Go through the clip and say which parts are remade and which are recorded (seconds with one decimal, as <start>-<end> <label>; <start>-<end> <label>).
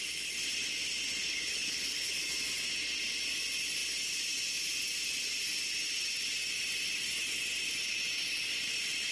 0.0-1.2 recorded; 1.2-2.1 remade; 2.1-9.1 recorded